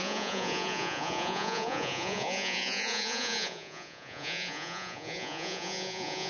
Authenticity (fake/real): fake